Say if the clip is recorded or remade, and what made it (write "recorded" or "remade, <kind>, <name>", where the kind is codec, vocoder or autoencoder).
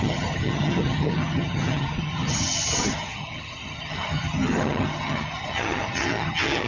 remade, vocoder, HiFi-GAN